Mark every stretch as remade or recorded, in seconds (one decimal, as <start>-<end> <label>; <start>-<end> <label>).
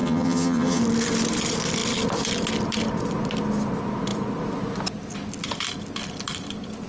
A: 0.0-0.8 remade; 0.8-6.9 recorded